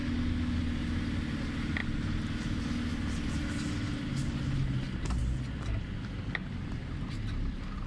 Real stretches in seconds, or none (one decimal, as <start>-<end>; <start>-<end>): 0.0-7.9